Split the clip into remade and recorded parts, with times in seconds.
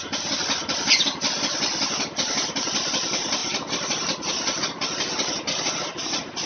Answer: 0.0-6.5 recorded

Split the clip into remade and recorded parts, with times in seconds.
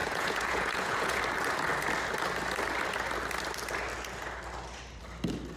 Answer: 0.0-1.2 remade; 1.2-5.6 recorded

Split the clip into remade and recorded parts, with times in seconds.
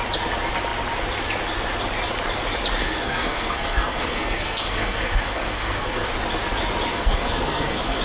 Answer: 0.0-2.8 recorded; 2.8-6.1 remade; 6.1-6.9 recorded; 6.9-8.0 remade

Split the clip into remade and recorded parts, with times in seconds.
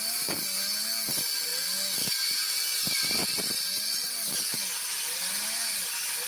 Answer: 0.0-6.3 recorded